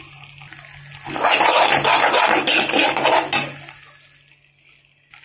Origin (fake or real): real